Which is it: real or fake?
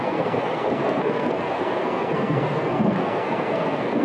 fake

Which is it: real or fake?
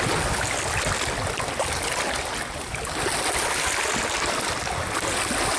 real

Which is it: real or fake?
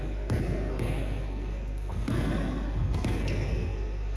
fake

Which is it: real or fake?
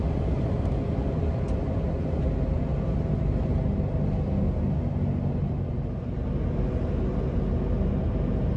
real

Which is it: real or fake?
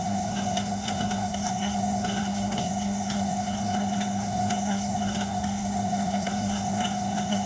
fake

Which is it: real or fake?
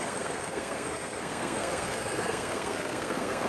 fake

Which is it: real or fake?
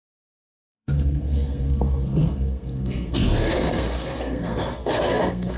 fake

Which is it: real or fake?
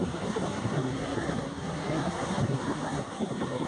fake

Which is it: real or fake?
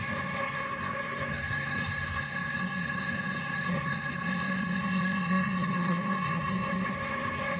fake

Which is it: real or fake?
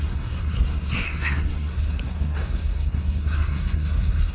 fake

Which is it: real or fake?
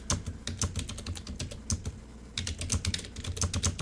real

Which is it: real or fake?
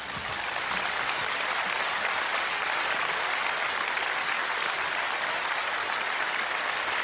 real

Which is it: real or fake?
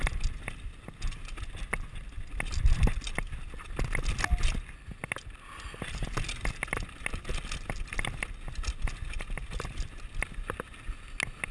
real